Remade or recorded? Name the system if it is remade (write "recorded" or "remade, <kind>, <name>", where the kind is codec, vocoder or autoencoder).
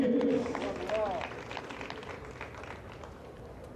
recorded